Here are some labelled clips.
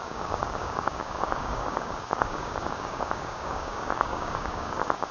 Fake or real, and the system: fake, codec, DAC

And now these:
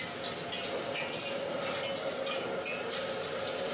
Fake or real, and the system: real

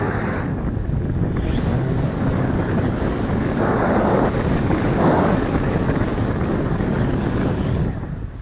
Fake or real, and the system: fake, codec, DAC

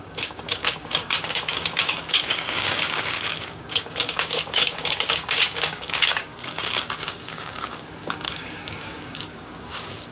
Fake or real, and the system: fake, codec, DAC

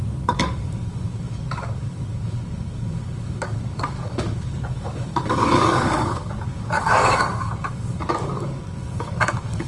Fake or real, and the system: fake, codec, DAC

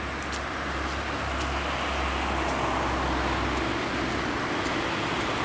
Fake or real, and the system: real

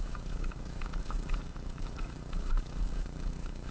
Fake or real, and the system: fake, codec, DAC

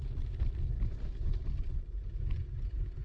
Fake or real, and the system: real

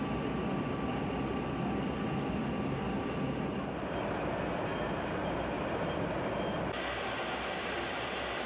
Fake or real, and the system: real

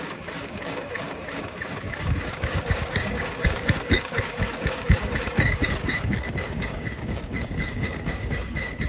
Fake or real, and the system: fake, codec, DAC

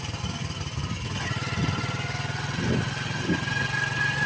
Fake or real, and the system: real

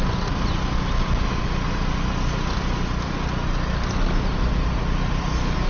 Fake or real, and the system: real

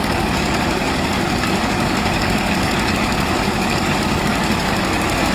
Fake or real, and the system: fake, codec, DAC